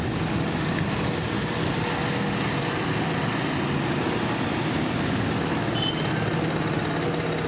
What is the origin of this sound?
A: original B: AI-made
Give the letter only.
A